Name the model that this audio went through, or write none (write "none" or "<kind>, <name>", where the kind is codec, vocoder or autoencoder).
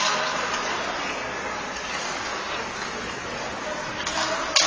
none